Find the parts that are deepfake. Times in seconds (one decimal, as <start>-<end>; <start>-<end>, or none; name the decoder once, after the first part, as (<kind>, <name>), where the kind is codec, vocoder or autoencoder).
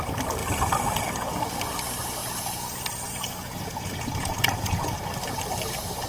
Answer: 2.2-4.9 (vocoder, Vocos)